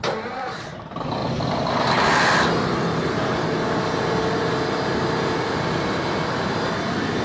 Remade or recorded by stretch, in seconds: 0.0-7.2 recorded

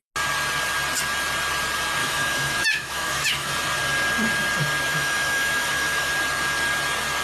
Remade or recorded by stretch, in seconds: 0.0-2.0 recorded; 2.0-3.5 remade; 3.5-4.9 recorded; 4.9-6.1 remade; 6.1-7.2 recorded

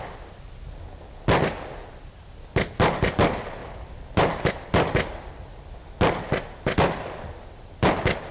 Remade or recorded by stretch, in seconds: 0.0-3.6 recorded; 3.6-4.5 remade; 4.5-8.3 recorded

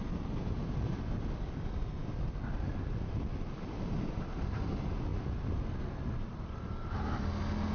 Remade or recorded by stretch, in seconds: 0.0-7.7 recorded